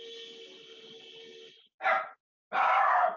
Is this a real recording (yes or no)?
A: yes